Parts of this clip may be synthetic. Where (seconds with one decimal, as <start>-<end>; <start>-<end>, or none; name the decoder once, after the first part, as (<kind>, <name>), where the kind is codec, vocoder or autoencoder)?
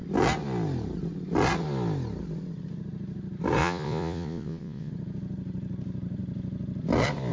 3.6-4.9 (vocoder, Vocos)